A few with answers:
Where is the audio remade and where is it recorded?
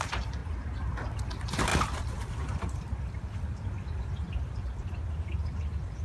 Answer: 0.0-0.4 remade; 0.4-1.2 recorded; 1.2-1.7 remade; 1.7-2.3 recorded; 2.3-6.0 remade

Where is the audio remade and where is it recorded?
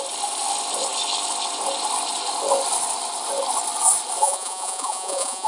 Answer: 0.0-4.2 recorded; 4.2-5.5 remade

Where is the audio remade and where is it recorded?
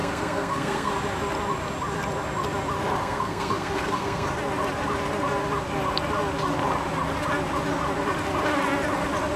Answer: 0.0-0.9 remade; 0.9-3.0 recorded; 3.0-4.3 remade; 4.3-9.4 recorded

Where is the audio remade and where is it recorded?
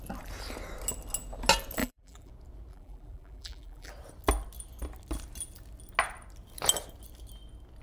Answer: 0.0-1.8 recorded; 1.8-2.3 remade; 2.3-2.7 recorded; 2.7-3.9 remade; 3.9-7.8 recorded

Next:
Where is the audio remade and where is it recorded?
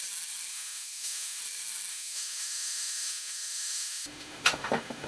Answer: 0.0-0.5 recorded; 0.5-1.4 remade; 1.4-1.9 recorded; 1.9-5.1 remade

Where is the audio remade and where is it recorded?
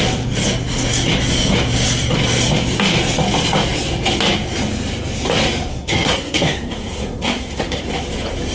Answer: 0.0-5.7 recorded; 5.7-7.8 remade; 7.8-8.5 recorded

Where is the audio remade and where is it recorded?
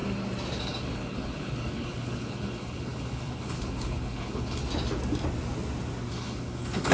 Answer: 0.0-0.6 recorded; 0.6-4.6 remade; 4.6-6.1 recorded; 6.1-6.9 remade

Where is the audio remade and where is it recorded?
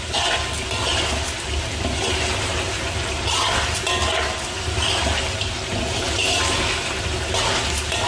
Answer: 0.0-8.1 recorded